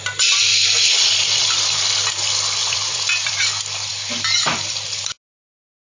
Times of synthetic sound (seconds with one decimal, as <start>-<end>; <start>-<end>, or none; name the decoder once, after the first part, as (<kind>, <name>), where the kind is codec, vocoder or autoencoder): 0.5-1.5 (vocoder, BigVGAN v2); 2.6-3.4; 3.9-5.1

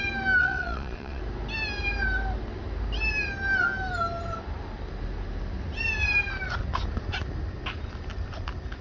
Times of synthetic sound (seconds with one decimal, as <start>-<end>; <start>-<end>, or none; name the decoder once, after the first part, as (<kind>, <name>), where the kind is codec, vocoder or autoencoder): 0.4-1.2 (vocoder, WaveNeXt)